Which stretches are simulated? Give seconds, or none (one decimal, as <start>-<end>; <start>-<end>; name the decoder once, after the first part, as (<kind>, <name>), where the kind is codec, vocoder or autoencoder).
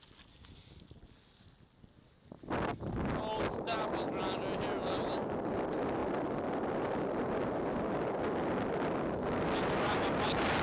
none